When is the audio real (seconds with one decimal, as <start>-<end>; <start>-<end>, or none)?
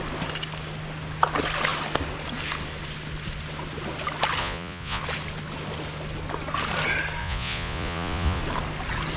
0.0-4.4; 5.0-7.2; 8.4-9.2